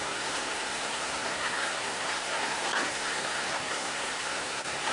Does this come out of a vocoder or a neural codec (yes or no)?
yes